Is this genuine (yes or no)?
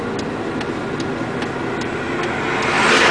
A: yes